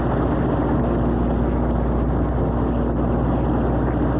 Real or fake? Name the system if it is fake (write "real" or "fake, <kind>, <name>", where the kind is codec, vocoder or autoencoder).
real